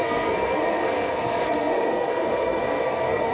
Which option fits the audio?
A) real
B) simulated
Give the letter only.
B